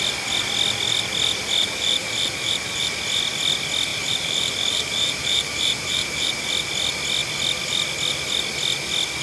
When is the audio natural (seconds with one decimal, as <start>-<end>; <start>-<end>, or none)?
0.0-1.6; 2.9-3.9; 6.5-9.2